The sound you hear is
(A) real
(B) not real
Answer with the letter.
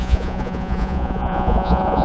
B